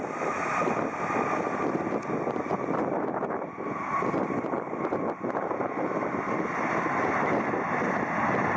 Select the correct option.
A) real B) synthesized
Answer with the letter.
A